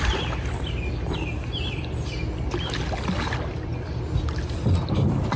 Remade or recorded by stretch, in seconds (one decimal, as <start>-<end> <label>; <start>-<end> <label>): 0.0-5.4 recorded

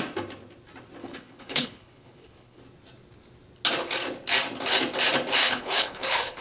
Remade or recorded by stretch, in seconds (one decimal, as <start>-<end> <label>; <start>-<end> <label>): 0.0-1.0 recorded; 1.0-2.6 remade; 2.6-5.4 recorded; 5.4-6.4 remade

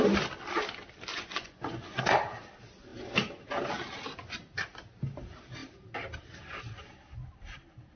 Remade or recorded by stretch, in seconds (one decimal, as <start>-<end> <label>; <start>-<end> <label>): 0.0-1.1 recorded; 1.1-2.0 remade; 2.0-8.0 recorded

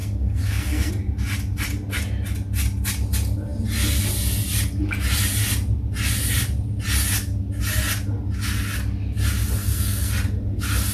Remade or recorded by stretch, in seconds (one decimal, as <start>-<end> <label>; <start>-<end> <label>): 0.0-0.9 remade; 0.9-9.6 recorded; 9.6-10.1 remade; 10.1-10.9 recorded

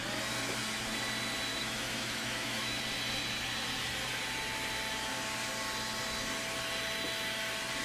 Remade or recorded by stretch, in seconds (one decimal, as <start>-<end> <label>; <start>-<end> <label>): 0.0-1.5 recorded; 1.5-2.8 remade; 2.8-7.8 recorded

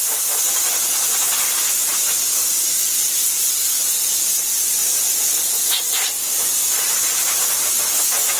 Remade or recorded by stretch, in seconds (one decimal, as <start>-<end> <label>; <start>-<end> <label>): 0.0-8.4 recorded